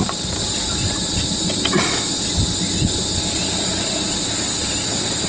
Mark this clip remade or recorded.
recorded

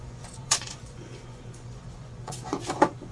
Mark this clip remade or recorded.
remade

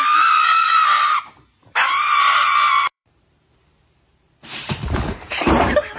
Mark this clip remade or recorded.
remade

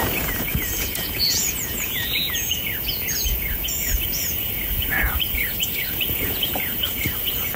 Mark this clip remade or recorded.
remade